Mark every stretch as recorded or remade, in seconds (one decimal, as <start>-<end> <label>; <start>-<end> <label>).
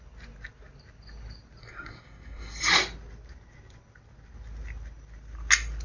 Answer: 0.0-1.6 recorded; 1.6-2.6 remade; 2.6-5.8 recorded